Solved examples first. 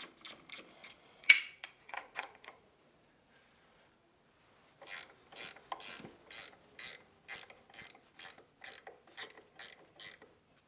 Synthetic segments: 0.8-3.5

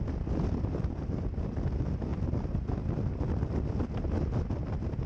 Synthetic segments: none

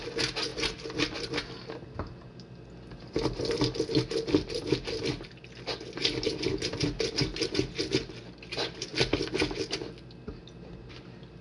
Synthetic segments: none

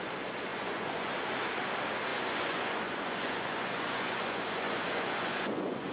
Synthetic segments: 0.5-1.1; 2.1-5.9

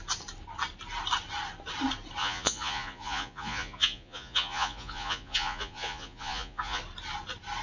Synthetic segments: 2.2-6.8